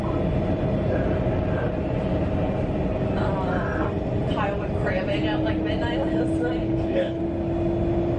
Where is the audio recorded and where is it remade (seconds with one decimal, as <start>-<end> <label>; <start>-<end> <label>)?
0.0-6.6 recorded; 6.6-7.2 remade; 7.2-8.2 recorded

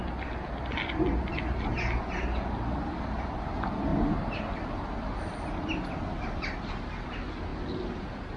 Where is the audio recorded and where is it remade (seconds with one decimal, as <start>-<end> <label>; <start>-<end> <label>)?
0.0-8.4 recorded